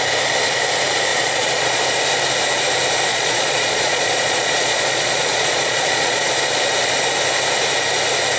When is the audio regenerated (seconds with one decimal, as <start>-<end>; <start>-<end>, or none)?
1.1-1.8; 3.1-6.3